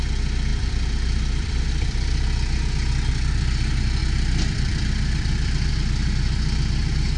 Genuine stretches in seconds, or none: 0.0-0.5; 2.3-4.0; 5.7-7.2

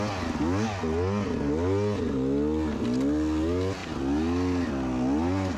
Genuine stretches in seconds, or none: 0.0-5.6